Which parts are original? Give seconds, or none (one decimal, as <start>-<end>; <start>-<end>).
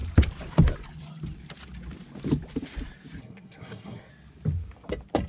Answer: 0.0-3.2; 4.1-5.3